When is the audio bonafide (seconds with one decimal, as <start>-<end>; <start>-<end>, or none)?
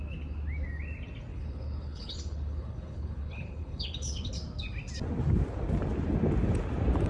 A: 0.0-1.3; 4.3-7.1